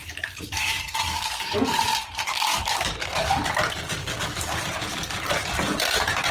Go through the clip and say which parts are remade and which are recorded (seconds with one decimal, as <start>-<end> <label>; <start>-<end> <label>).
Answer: 0.0-3.5 remade; 3.5-4.0 recorded; 4.0-4.6 remade; 4.6-6.3 recorded